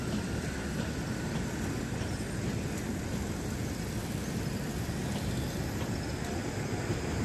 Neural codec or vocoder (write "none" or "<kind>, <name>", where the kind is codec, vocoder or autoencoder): none